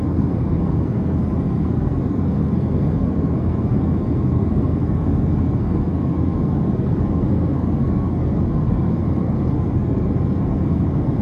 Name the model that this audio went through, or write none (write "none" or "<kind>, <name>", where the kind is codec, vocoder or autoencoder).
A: codec, SNAC